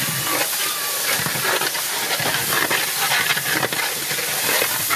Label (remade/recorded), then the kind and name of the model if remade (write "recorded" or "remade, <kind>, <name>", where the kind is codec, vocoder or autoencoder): remade, vocoder, BigVGAN v2